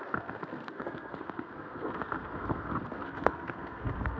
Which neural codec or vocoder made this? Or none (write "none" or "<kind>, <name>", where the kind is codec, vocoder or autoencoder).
codec, SNAC